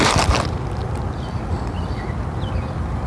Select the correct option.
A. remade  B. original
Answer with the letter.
B